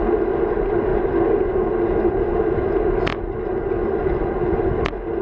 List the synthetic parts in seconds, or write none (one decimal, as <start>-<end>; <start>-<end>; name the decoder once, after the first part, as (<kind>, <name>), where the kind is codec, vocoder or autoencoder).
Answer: none

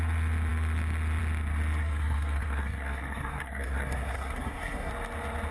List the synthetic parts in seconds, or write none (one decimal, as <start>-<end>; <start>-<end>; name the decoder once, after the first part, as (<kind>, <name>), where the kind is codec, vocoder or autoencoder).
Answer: 1.8-4.9 (codec, SNAC)

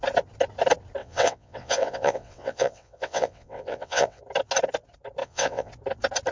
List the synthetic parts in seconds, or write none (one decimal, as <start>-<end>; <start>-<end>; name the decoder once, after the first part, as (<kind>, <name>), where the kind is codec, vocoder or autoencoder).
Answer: 1.0-4.2 (vocoder, WaveNeXt); 5.2-5.7

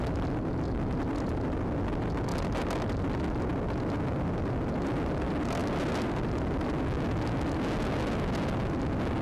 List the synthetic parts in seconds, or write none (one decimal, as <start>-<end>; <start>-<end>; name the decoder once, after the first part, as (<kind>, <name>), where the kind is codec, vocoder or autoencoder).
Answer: none